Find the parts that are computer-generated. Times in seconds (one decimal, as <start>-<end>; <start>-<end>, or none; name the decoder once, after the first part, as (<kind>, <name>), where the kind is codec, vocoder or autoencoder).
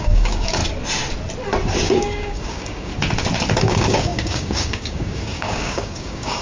0.0-0.6 (codec, DAC); 1.8-2.9; 3.6-6.4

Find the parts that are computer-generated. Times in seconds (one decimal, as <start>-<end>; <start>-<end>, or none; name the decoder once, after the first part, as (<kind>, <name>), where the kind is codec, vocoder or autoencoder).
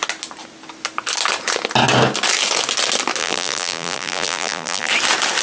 3.2-4.9 (vocoder, BigVGAN v2)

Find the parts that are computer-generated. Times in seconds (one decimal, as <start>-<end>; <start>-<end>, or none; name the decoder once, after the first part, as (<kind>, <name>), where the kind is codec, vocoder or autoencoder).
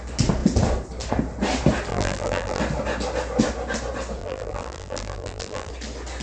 1.9-2.6 (vocoder, BigVGAN v2); 4.2-5.7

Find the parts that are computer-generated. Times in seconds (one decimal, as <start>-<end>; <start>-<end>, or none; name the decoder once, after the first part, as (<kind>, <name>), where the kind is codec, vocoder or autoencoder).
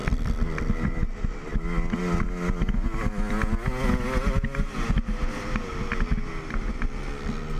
0.0-1.5 (vocoder, BigVGAN v2)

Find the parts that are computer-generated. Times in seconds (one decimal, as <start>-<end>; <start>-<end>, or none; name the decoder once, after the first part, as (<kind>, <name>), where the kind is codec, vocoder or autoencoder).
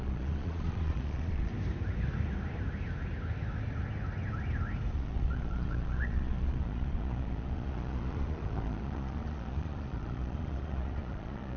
0.0-1.5 (vocoder, Vocos); 4.9-11.6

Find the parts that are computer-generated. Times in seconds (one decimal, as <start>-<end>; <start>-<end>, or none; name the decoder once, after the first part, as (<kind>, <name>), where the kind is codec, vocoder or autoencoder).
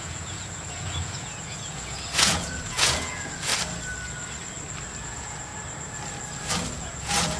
0.0-3.5 (vocoder, Vocos); 5.0-5.5; 6.7-7.4